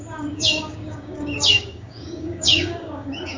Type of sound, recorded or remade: remade